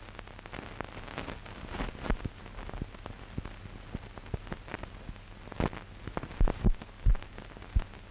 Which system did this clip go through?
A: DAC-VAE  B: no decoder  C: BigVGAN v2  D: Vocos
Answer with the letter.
B